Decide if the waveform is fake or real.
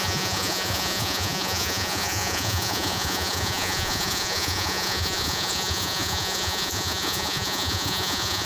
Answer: fake